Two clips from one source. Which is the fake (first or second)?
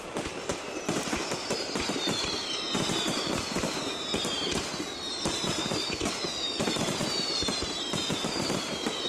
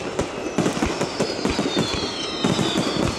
first